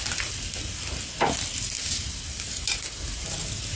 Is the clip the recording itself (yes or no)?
yes